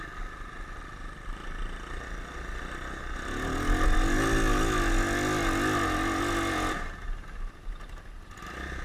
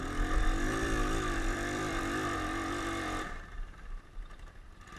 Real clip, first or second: first